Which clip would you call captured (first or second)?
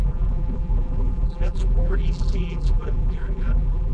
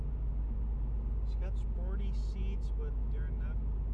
second